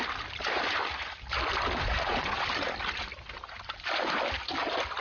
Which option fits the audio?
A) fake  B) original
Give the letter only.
B